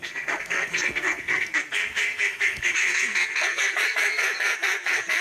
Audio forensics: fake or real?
fake